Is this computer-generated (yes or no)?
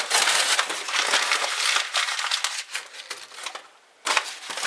no